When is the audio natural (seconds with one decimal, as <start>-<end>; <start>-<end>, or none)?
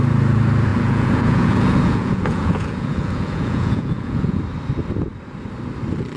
0.0-0.7; 4.4-6.2